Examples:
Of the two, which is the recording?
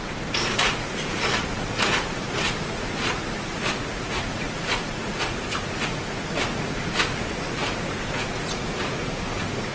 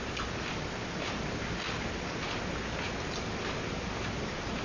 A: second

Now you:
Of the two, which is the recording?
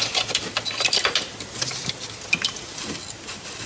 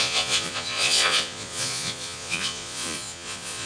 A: first